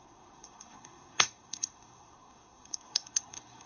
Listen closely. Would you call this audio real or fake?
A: fake